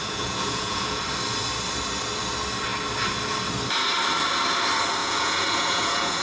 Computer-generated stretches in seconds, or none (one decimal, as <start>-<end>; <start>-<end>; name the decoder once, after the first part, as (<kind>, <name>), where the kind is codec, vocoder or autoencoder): 0.0-1.0 (vocoder, Vocos); 5.0-6.2

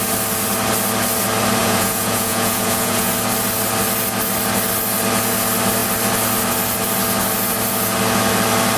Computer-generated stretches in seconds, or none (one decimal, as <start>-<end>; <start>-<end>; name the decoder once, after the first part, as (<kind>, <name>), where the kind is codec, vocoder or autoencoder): 1.6-3.1 (vocoder, Vocos)